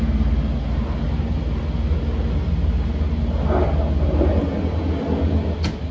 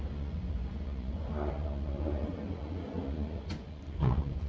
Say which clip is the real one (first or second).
first